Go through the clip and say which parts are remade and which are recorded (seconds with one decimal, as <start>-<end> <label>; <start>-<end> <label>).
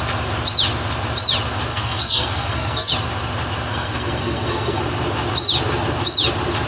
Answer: 0.0-1.7 recorded; 1.7-2.9 remade; 2.9-3.7 recorded; 3.7-4.8 remade; 4.8-6.7 recorded